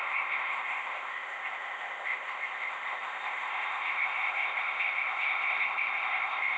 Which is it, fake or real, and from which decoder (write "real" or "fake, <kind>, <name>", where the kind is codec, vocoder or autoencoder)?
fake, codec, ZipCodec